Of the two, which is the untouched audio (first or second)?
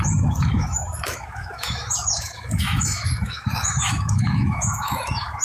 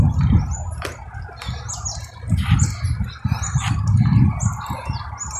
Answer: second